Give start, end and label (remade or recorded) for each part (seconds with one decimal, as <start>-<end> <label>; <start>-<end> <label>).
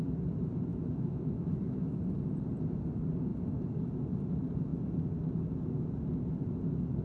0.0-0.7 recorded; 0.7-2.0 remade; 2.0-7.0 recorded